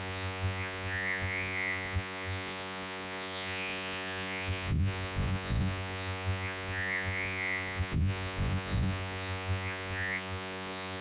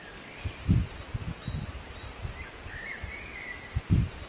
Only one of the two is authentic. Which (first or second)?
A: second